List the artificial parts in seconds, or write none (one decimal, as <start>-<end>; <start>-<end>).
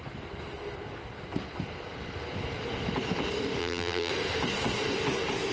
3.6-4.1